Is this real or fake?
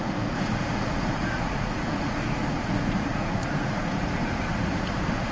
fake